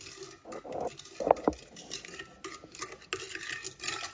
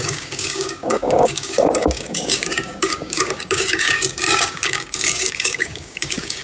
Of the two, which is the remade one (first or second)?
second